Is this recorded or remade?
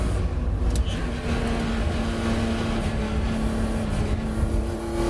recorded